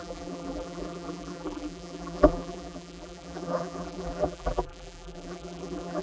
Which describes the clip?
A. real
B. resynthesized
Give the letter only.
B